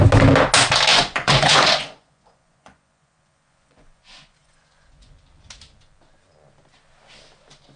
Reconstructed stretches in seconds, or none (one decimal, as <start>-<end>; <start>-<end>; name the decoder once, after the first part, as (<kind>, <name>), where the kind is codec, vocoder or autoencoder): 0.9-5.1 (vocoder, Vocos)